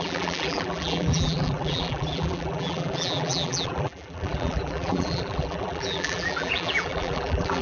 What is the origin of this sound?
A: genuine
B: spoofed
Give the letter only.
B